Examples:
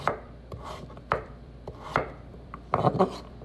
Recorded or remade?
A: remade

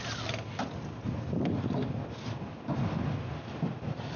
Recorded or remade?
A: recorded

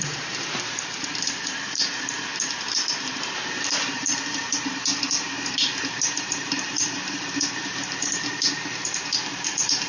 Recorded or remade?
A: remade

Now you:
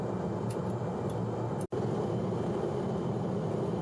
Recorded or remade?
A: recorded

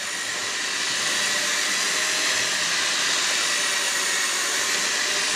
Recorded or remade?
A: recorded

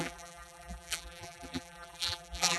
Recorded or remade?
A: remade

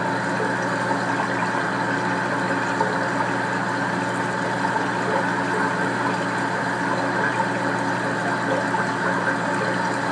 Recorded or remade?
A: recorded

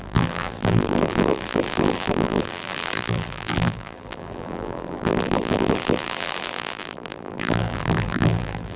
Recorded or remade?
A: remade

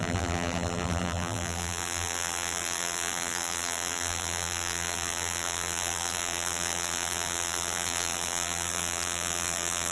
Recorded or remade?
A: remade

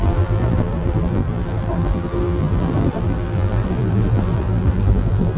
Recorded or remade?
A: remade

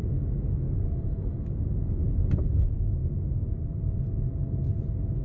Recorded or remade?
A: recorded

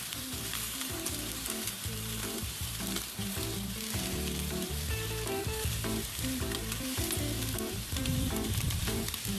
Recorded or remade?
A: remade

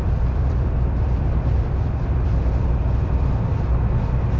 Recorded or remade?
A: remade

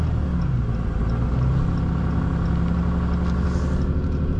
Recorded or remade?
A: recorded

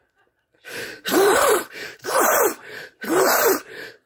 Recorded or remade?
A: remade